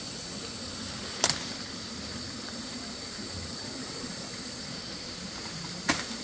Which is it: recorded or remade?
recorded